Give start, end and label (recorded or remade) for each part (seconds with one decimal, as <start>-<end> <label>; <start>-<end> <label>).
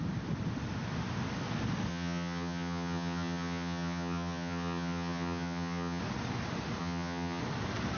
0.0-1.9 recorded; 1.9-6.0 remade; 6.0-6.8 recorded; 6.8-7.4 remade; 7.4-8.0 recorded